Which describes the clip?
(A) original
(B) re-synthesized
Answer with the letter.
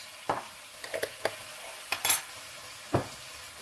A